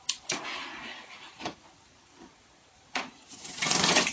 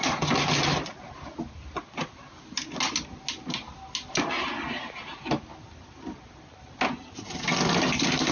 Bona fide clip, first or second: second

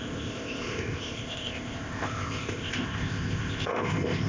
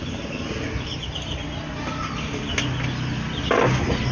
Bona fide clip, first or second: second